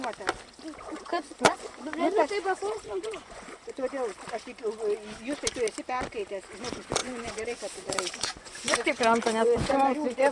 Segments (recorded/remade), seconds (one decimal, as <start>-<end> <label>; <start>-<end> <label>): 0.0-1.1 recorded; 1.1-4.0 remade; 4.0-7.0 recorded; 7.0-10.3 remade